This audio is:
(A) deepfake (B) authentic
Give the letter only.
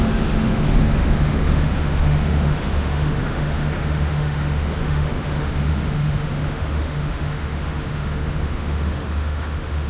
A